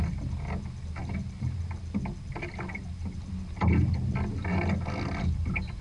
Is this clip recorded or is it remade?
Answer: recorded